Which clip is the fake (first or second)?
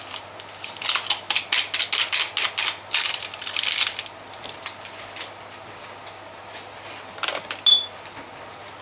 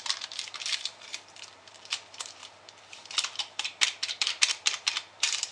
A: second